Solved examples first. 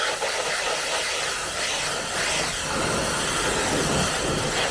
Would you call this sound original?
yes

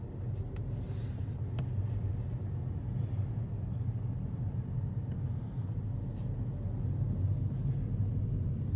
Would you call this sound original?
yes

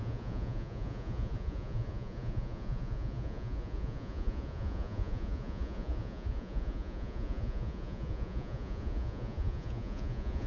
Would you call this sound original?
no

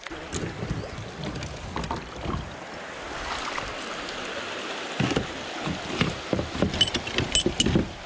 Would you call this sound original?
yes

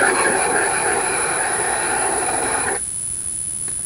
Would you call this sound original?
no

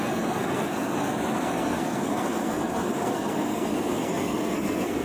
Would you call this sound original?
no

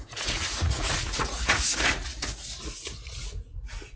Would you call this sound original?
no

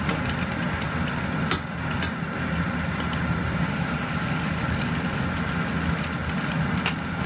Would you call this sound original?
yes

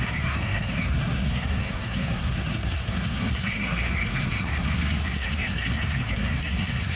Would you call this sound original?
no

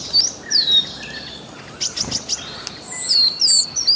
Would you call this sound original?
yes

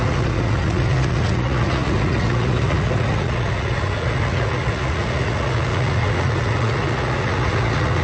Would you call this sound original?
no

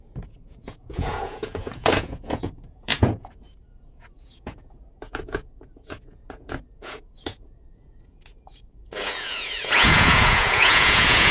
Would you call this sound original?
no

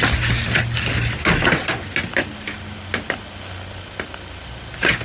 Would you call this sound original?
yes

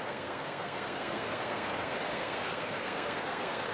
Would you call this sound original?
no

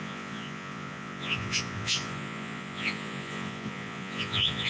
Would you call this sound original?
no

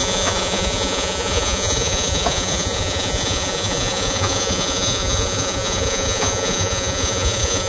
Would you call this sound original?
no